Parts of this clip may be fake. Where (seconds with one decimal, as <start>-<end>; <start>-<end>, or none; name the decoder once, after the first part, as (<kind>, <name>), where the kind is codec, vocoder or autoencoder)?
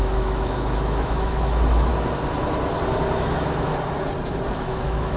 0.0-1.9 (autoencoder, DAC-VAE); 3.2-3.7; 4.5-5.2